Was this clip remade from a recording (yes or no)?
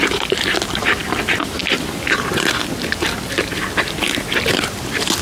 no